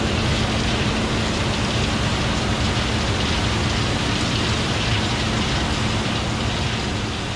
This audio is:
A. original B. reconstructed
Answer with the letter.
A